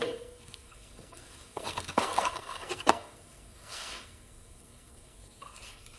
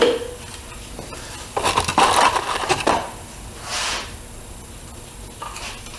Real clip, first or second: second